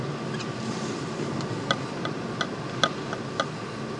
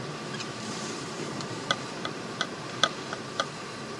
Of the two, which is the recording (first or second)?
first